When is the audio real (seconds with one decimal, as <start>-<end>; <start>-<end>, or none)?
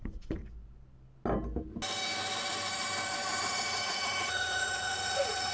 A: 0.4-3.4